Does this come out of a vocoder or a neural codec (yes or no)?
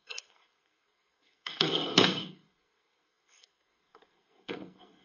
yes